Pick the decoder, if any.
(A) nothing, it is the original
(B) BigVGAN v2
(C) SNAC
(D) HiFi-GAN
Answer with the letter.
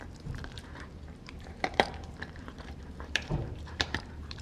B